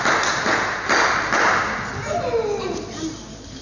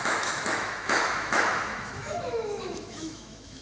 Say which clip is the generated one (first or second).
second